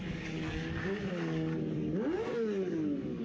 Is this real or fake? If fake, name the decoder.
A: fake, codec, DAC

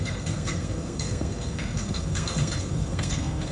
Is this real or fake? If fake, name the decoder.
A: fake, codec, SNAC